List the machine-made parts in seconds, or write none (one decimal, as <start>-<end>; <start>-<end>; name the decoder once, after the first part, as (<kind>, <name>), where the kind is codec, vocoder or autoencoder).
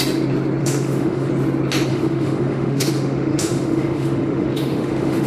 0.6-1.3 (autoencoder, DAC-VAE); 1.9-5.3